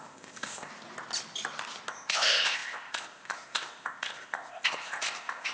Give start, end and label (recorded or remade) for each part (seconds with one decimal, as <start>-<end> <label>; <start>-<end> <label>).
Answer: 0.0-0.7 remade; 0.7-1.9 recorded; 1.9-5.5 remade